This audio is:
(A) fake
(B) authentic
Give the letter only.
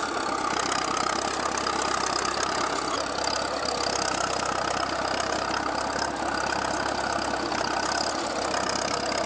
B